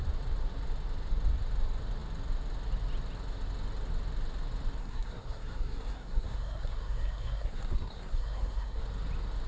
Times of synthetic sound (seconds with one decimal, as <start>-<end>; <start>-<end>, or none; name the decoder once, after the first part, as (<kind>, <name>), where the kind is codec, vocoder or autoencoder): 4.8-8.8 (codec, SNAC)